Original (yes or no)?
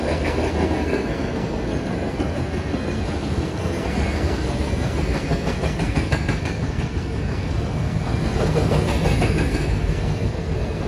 no